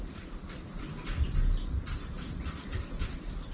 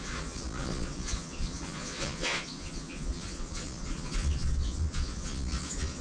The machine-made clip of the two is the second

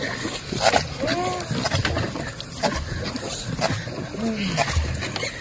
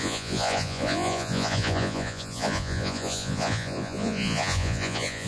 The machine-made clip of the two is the second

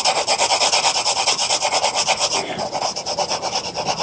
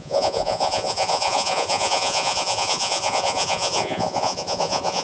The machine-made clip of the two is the second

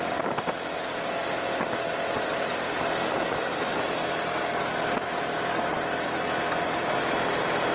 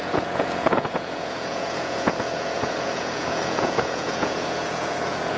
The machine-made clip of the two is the second